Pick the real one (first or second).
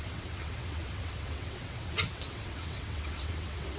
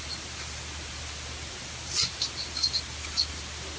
second